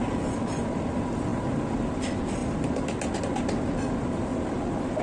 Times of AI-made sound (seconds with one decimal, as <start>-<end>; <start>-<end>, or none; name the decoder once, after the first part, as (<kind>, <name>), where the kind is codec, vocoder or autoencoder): none